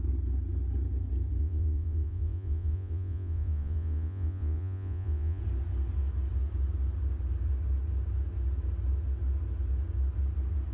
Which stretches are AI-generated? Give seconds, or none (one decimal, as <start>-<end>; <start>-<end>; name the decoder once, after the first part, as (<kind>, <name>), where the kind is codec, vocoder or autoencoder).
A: 1.4-5.4 (vocoder, Vocos)